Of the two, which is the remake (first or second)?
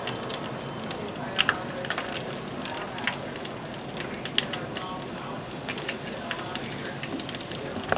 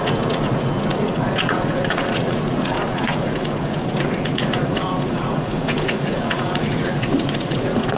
second